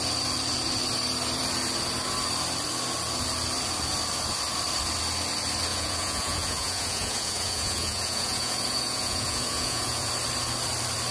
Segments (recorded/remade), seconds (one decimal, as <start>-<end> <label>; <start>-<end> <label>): 0.0-5.7 recorded; 5.7-10.1 remade; 10.1-11.1 recorded